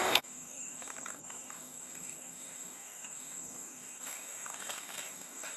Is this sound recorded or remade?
remade